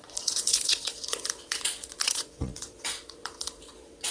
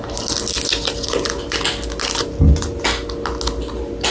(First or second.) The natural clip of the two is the second